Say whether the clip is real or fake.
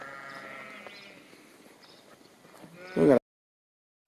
real